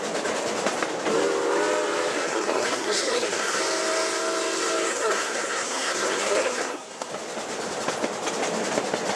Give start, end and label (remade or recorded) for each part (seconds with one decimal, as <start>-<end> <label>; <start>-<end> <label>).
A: 0.0-2.1 recorded; 2.1-3.6 remade; 3.6-4.9 recorded; 4.9-7.1 remade; 7.1-9.2 recorded